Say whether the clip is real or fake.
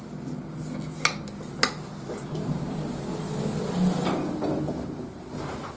real